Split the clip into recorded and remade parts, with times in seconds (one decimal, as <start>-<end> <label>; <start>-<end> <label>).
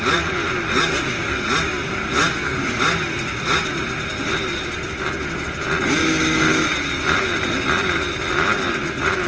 0.0-9.3 recorded